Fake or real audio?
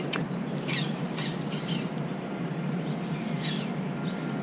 real